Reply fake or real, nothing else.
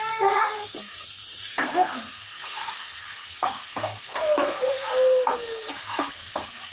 fake